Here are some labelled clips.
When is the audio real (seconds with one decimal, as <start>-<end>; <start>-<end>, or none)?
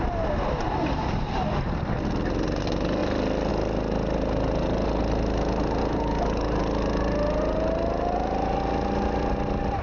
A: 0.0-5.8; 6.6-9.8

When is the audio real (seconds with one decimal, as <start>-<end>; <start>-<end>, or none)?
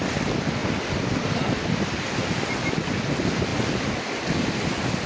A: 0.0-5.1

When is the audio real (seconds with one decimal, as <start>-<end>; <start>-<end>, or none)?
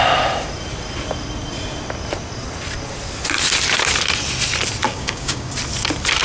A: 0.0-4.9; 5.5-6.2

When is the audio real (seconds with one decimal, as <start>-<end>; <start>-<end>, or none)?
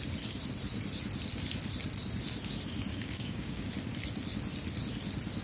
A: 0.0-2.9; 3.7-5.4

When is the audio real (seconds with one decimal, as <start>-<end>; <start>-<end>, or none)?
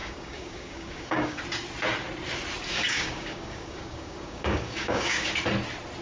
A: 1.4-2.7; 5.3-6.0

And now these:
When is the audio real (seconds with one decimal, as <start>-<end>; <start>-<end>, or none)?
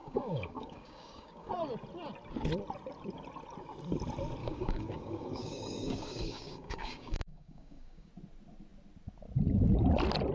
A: 1.5-4.4; 8.1-10.3